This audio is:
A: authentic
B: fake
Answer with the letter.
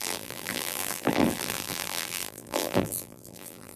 B